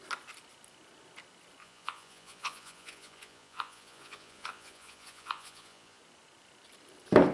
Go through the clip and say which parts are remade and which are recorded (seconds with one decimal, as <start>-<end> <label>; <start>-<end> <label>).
0.0-1.6 recorded; 1.6-6.0 remade; 6.0-7.3 recorded